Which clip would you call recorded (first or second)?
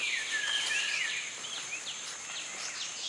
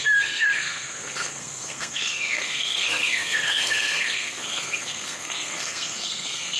first